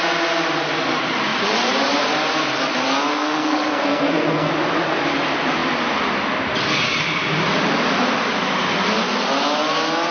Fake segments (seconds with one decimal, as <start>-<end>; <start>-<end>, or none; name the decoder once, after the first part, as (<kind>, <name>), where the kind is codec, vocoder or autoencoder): 3.1-4.5 (codec, SNAC)